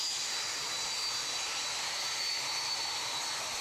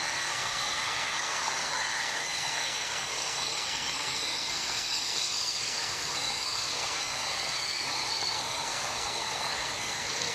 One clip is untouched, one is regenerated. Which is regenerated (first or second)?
second